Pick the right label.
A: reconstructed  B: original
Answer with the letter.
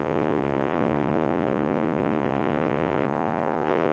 A